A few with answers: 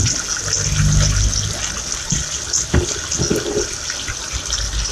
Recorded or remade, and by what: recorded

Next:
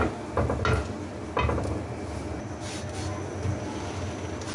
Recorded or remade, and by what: recorded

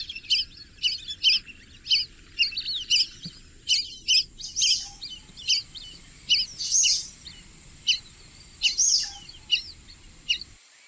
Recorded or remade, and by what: recorded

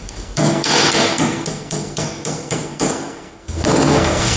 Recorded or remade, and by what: remade, codec, SNAC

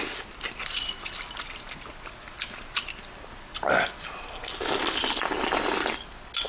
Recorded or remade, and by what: recorded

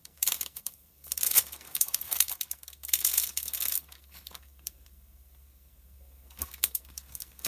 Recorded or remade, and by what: remade, codec, SNAC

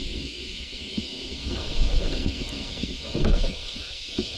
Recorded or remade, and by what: remade, codec, SNAC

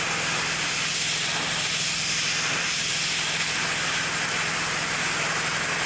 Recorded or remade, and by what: recorded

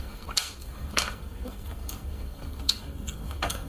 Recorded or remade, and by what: remade, codec, SNAC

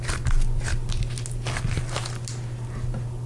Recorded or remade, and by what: recorded